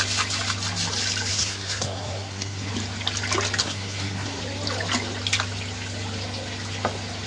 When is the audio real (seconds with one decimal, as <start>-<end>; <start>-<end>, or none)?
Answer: 0.0-1.3; 2.7-3.6; 4.4-7.3